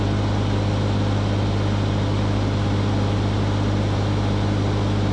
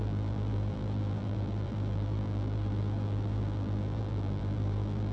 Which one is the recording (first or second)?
first